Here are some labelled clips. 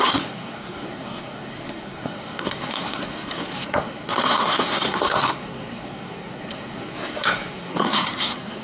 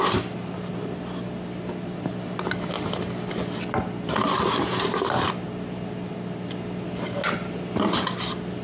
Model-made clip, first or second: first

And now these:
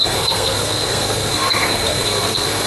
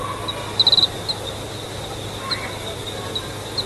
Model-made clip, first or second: first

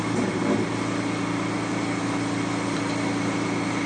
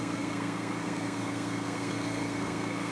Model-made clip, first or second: second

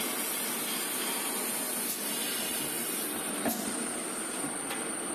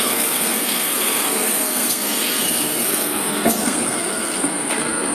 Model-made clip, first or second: second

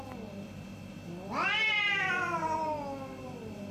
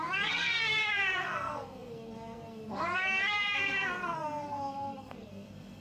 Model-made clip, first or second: second